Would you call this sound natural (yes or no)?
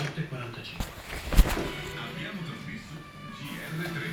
yes